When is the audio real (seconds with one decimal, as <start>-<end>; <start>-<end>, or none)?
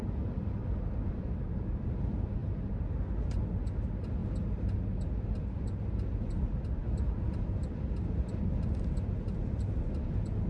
0.0-10.5